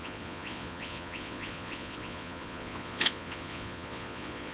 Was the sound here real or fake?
fake